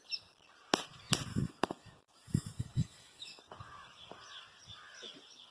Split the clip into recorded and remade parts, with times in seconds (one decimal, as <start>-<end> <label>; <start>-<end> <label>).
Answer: 0.0-1.3 recorded; 1.3-3.4 remade; 3.4-5.5 recorded